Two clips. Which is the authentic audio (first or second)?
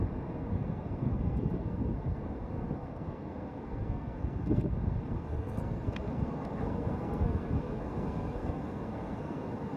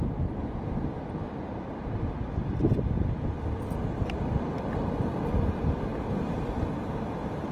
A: second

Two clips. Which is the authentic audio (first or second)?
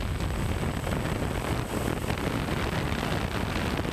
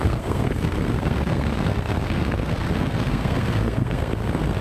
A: first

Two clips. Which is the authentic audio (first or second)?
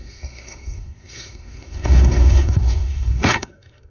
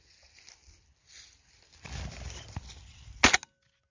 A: second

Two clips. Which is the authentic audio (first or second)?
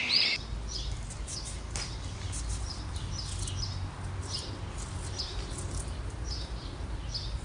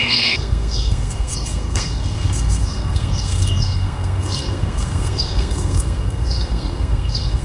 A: first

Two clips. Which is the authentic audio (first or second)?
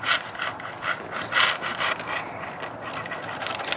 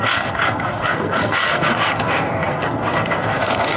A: first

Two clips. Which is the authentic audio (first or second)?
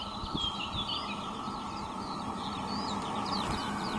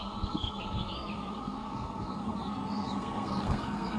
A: first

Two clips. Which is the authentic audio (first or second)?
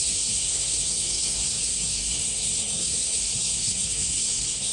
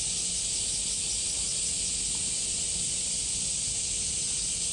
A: second